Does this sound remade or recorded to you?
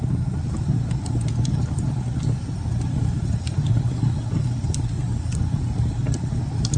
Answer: recorded